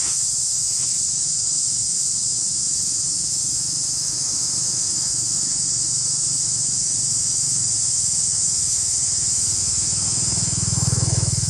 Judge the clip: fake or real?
fake